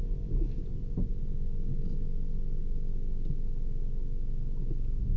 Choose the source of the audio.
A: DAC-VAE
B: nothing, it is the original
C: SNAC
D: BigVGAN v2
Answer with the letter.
B